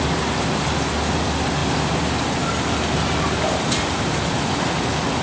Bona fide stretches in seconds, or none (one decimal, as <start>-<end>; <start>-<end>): 0.0-1.6; 4.6-5.2